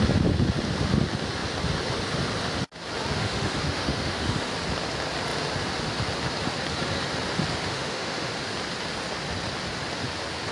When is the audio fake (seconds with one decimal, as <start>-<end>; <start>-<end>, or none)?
3.2-4.5; 7.6-8.3